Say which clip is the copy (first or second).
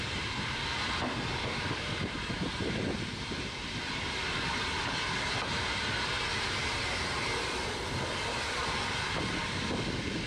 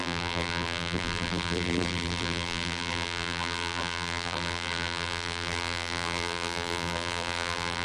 second